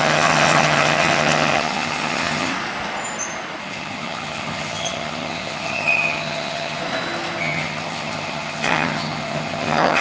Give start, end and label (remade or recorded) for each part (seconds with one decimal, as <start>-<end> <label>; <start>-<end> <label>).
0.0-2.5 remade; 2.5-3.6 recorded; 3.6-6.8 remade; 6.8-7.4 recorded; 7.4-10.0 remade